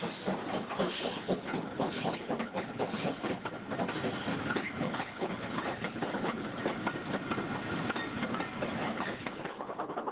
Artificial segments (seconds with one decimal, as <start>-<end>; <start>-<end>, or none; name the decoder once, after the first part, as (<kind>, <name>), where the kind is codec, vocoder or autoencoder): 0.5-3.5 (codec, HILCodec); 4.3-6.6; 8.8-10.1